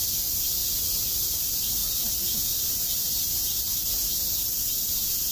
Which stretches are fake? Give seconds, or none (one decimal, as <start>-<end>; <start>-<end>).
0.0-0.6; 1.1-1.8